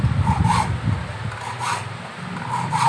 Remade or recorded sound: recorded